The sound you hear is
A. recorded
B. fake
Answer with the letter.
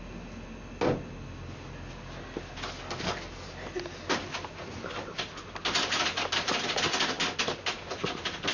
A